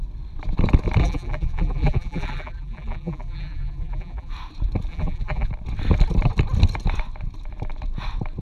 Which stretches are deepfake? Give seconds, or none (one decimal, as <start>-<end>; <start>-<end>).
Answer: 1.0-4.3; 4.9-5.5